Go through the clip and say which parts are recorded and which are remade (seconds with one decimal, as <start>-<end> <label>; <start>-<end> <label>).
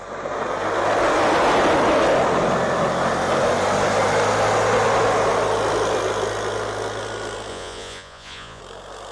0.0-7.5 recorded; 7.5-8.6 remade; 8.6-9.1 recorded